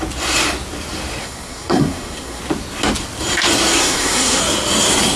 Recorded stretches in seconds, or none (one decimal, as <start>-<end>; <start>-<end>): 0.0-1.2; 2.4-3.8; 4.4-5.2